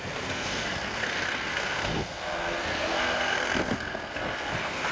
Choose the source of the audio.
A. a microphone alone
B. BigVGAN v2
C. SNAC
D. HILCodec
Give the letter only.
C